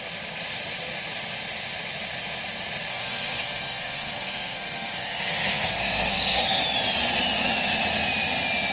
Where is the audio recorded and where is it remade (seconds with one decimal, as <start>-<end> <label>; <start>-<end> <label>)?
0.0-2.9 recorded; 2.9-6.6 remade; 6.6-8.7 recorded